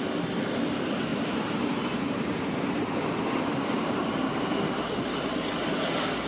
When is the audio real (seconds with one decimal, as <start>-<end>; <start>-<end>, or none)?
0.0-1.1; 4.9-6.3